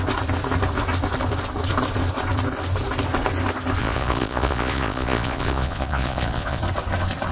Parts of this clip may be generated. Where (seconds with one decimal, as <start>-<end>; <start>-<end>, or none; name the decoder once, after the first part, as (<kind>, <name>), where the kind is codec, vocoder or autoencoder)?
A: 3.8-6.6 (vocoder, Vocos)